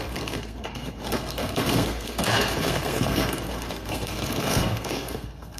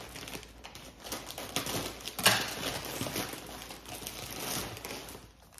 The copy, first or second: first